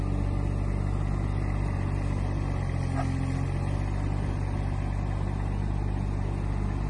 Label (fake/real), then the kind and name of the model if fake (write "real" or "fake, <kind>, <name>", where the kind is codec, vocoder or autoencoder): real